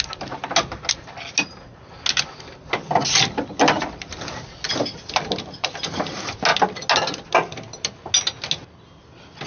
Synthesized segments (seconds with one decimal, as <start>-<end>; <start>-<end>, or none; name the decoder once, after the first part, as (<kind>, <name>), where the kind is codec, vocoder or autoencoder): none